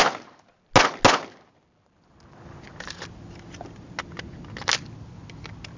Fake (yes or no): no